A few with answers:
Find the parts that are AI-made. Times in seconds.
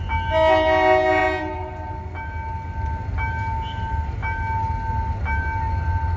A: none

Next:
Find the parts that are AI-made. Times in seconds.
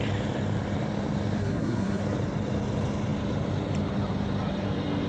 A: 1.4-2.0 (codec, SNAC)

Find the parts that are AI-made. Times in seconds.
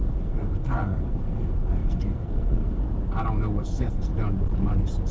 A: 0.0-2.8 (codec, SNAC); 3.6-4.1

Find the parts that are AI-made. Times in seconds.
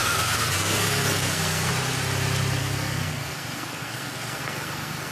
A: 0.0-1.7 (codec, SNAC); 2.6-5.1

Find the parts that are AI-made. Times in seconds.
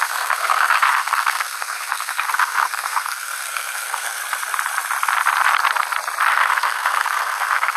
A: 0.0-4.2 (codec, SNAC); 6.3-7.8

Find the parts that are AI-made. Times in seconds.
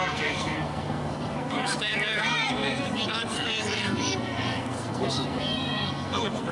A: 0.0-6.5 (codec, SNAC)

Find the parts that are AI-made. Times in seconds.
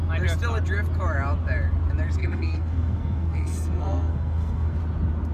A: 2.2-4.8 (codec, SNAC)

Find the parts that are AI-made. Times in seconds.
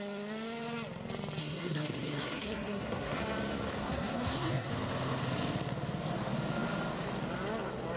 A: 1.4-3.2 (codec, SNAC); 3.8-4.7